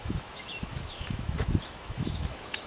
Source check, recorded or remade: remade